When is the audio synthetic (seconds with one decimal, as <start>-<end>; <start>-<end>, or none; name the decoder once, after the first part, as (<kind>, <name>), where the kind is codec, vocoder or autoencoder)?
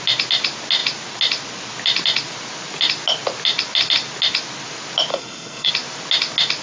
5.1-5.7 (codec, SNAC)